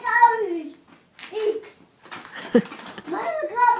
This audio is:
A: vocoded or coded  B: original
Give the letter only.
B